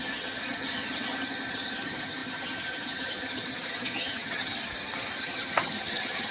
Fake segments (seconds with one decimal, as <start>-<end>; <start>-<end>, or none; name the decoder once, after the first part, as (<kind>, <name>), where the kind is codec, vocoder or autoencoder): 0.0-0.4 (vocoder, HiFi-GAN); 1.5-4.5; 5.2-6.3